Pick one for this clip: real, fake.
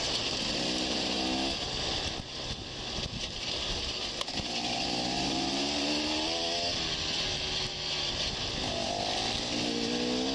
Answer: real